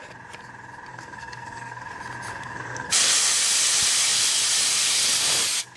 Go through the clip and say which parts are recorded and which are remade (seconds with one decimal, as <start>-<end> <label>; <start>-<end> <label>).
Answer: 0.0-0.9 recorded; 0.9-1.9 remade; 1.9-2.3 recorded; 2.3-2.9 remade; 2.9-5.8 recorded